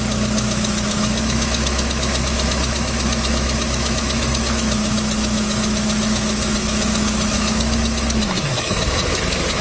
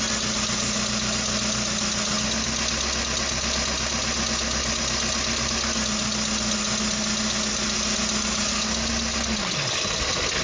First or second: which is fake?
first